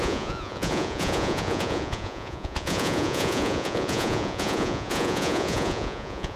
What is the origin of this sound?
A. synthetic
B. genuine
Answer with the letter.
A